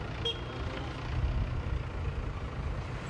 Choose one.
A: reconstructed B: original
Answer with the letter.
B